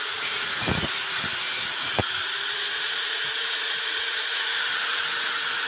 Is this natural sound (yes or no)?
no